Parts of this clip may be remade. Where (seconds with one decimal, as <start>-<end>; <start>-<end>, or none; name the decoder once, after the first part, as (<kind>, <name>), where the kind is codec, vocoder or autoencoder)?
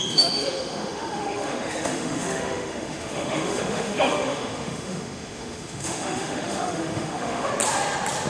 0.0-7.5 (autoencoder, DAC-VAE)